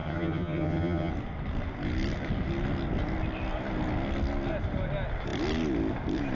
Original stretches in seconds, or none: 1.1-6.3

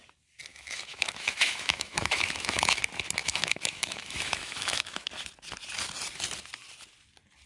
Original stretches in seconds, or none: 0.0-0.5; 2.8-3.2; 5.1-7.5

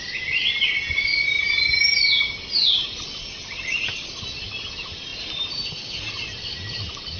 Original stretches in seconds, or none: 0.0-7.2